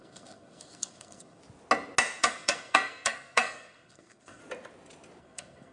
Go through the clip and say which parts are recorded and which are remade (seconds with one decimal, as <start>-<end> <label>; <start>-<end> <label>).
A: 0.0-1.4 remade; 1.4-2.2 recorded; 2.2-4.4 remade; 4.4-5.2 recorded; 5.2-5.7 remade

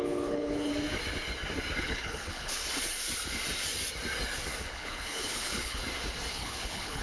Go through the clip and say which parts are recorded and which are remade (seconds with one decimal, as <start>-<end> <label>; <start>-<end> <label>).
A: 0.0-0.7 remade; 0.7-1.8 recorded; 1.8-2.6 remade; 2.6-4.6 recorded; 4.6-5.8 remade; 5.8-6.3 recorded; 6.3-7.0 remade

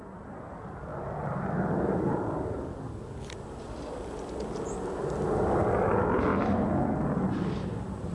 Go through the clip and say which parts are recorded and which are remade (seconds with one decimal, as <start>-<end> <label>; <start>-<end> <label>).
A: 0.0-8.1 recorded

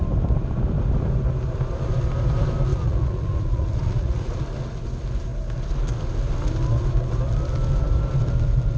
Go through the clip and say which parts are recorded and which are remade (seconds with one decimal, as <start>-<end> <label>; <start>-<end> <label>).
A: 0.0-2.7 recorded; 2.7-4.4 remade; 4.4-8.8 recorded

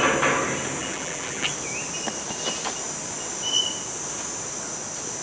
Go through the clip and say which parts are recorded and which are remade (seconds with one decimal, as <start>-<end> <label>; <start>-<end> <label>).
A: 0.0-0.8 recorded; 0.8-1.5 remade; 1.5-5.2 recorded

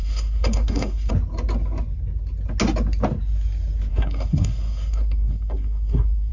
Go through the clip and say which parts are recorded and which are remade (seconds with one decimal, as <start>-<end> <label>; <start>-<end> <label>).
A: 0.0-1.1 remade; 1.1-3.9 recorded; 3.9-6.3 remade